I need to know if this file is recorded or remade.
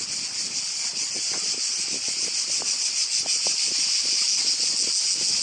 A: recorded